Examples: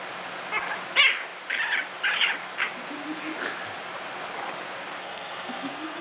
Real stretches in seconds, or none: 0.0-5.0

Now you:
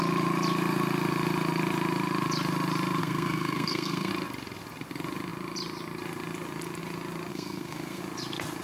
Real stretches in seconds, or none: 0.0-3.0; 4.1-7.3; 8.0-8.6

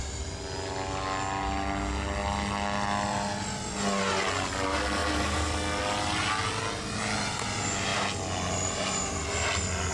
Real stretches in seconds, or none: 0.0-9.9

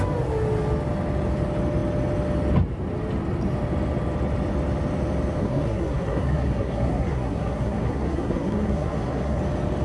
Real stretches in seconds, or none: 0.0-5.4; 9.4-9.8

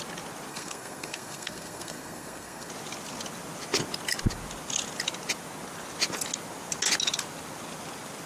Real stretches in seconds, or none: 0.0-0.5; 2.7-8.3

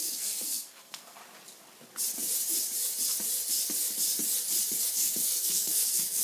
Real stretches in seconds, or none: 1.2-4.9

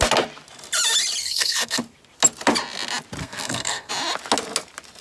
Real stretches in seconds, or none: 0.0-1.2; 1.8-3.2; 3.9-5.0